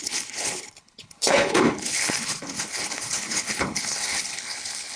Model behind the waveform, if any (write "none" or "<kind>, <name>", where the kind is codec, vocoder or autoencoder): codec, HILCodec